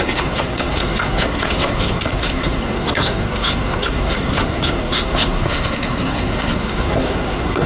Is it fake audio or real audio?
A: fake